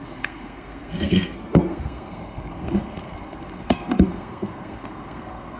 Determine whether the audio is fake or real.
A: fake